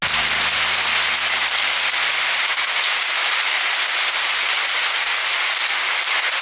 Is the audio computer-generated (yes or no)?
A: no